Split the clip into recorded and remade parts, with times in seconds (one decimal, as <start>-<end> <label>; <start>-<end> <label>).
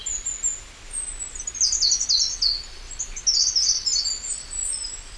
0.0-5.2 recorded